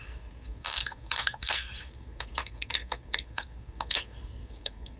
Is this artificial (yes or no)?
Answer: yes